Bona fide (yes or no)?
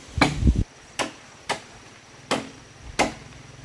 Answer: yes